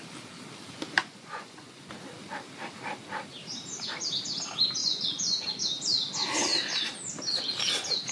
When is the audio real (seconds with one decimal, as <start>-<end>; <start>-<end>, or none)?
0.0-1.0; 1.9-4.8; 5.6-8.1